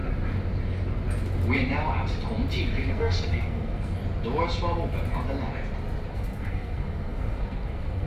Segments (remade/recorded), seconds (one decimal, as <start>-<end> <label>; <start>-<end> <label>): 0.0-2.9 recorded; 2.9-4.0 remade; 4.0-6.1 recorded; 6.1-8.1 remade